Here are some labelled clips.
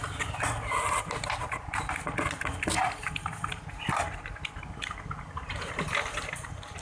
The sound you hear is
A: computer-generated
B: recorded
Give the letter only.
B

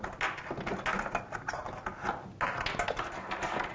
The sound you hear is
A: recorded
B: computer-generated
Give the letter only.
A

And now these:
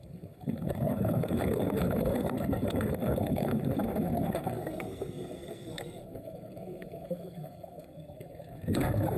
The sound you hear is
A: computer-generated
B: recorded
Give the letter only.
A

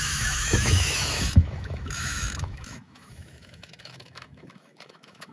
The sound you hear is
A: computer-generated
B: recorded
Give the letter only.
A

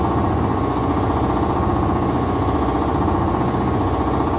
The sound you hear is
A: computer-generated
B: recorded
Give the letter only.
A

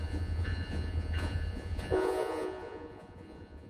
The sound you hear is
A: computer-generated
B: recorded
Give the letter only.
A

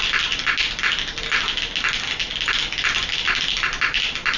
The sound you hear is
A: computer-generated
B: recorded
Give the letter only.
B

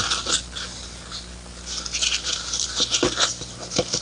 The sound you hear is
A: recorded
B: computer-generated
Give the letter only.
A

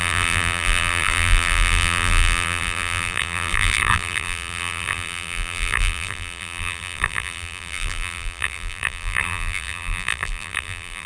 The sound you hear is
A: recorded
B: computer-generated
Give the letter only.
B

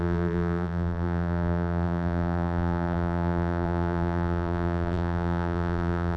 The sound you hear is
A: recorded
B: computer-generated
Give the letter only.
B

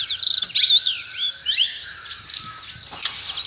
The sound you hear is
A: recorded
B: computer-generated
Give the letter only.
A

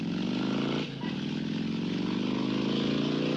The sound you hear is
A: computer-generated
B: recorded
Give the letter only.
B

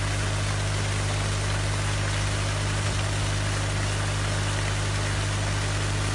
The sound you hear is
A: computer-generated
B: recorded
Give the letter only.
B